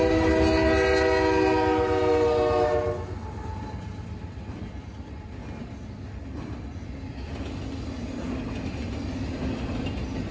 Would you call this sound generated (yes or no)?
no